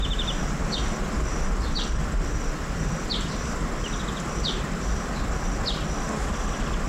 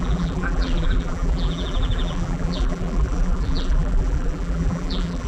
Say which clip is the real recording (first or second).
first